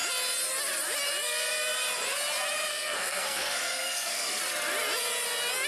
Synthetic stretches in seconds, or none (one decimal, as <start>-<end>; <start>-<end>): 2.7-4.4